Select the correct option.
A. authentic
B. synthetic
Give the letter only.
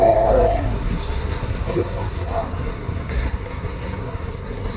B